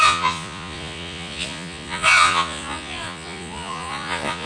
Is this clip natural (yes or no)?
no